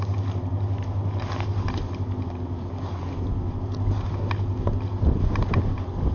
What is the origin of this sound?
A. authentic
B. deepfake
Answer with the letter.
A